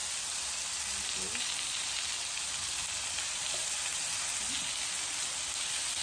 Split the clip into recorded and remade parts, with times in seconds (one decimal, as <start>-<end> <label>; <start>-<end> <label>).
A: 0.0-6.0 recorded